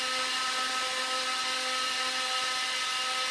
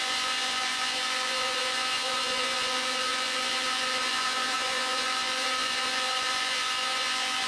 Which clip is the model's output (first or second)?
second